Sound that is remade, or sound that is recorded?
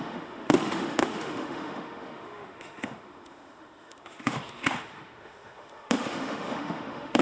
remade